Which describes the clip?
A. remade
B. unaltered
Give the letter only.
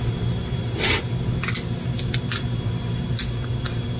B